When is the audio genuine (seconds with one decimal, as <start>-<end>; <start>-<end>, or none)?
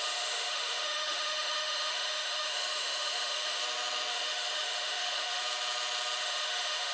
3.6-4.1; 5.4-6.2